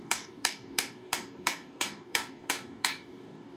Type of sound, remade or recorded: remade